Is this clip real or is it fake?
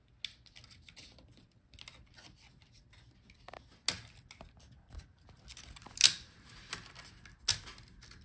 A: real